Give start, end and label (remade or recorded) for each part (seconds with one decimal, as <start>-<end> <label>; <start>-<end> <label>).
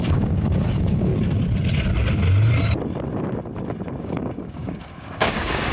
0.0-1.1 remade; 1.1-4.0 recorded; 4.0-5.7 remade